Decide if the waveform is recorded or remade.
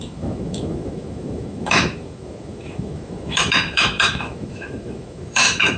remade